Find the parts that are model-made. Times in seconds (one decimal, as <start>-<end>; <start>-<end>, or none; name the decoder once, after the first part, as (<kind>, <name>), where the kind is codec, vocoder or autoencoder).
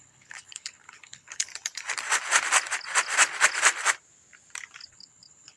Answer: 0.0-1.5 (codec, HILCodec); 4.9-5.6